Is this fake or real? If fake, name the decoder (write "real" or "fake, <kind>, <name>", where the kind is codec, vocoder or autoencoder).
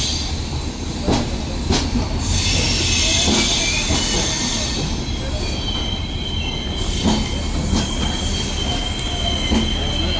real